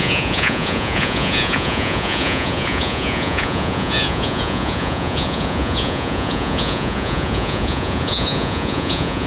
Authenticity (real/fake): fake